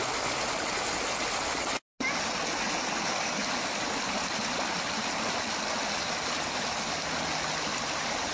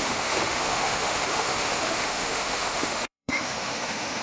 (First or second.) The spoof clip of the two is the second